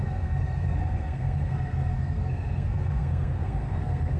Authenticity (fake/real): fake